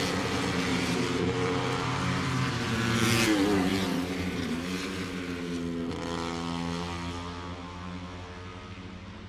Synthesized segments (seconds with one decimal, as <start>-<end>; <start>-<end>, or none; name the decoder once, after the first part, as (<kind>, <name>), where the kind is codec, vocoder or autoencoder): 0.7-2.7 (vocoder, BigVGAN v2); 3.7-5.2